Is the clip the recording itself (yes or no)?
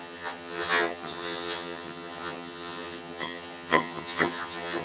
no